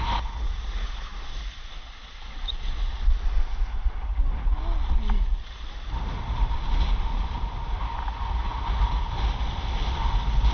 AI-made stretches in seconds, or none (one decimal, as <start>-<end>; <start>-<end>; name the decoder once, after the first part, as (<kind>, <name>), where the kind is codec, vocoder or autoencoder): none